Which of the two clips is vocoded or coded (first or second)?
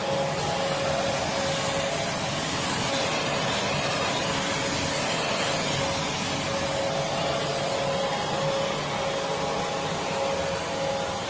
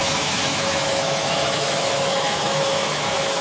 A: second